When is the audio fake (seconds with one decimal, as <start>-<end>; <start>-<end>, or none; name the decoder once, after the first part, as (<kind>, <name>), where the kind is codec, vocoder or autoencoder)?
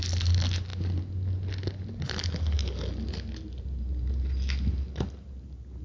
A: none